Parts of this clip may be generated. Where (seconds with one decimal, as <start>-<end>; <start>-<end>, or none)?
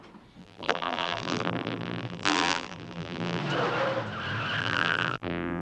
0.4-3.4; 4.6-5.6